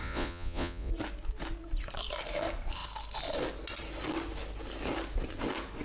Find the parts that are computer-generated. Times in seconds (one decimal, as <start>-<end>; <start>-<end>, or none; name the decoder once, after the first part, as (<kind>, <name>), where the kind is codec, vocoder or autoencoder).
0.0-0.9 (vocoder, Vocos)